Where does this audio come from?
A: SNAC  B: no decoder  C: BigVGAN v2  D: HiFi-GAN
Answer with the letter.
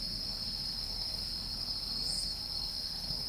A